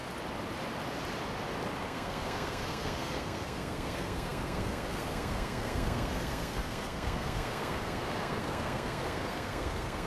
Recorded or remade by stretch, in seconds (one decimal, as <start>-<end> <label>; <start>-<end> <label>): 0.0-1.8 recorded; 1.8-10.1 remade